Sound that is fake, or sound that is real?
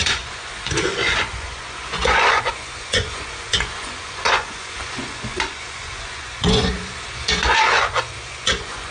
fake